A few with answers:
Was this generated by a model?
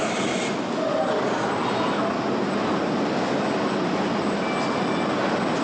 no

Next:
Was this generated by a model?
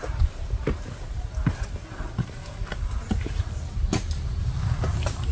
no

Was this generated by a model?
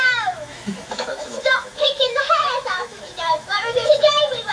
yes